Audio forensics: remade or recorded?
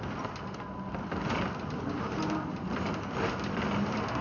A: recorded